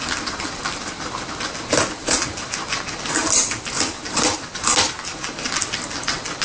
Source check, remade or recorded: recorded